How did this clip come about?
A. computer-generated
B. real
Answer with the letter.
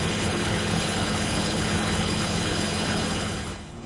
A